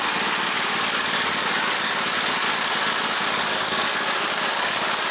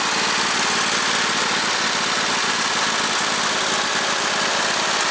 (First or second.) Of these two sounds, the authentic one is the second